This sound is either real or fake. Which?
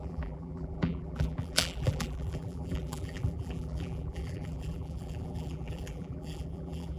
fake